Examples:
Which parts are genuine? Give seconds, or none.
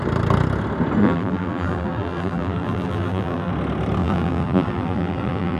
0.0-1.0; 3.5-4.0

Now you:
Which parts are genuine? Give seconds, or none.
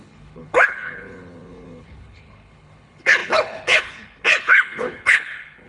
none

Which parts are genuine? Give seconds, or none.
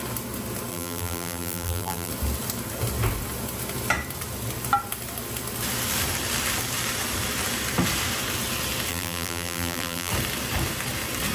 0.0-0.7; 2.1-8.9; 10.1-11.3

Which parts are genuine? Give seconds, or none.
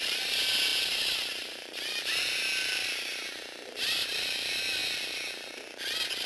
4.8-6.3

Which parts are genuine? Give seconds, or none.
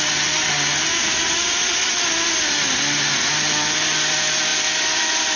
0.0-4.5; 5.0-5.4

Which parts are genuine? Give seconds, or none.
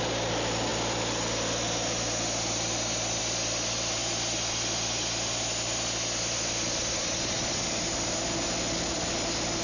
0.0-9.6